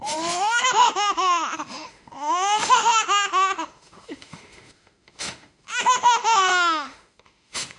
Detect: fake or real fake